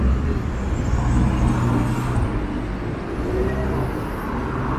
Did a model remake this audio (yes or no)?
no